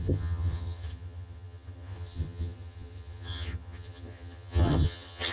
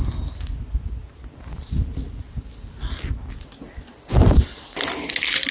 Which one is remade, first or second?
first